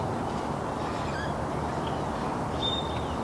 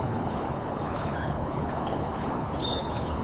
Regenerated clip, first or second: second